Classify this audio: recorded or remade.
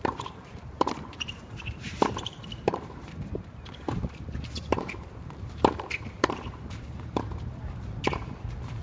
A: remade